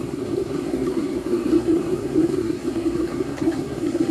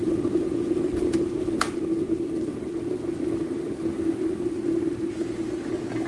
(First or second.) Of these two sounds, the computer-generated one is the first